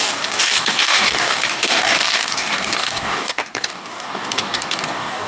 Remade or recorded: remade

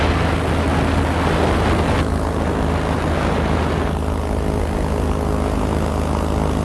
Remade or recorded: recorded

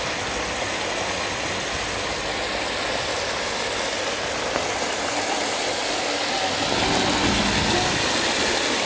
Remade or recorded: recorded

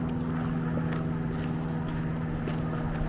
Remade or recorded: recorded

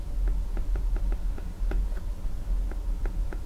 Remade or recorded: recorded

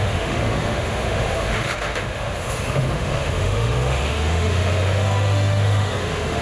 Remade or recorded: remade